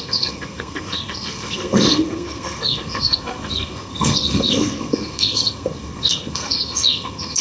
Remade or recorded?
remade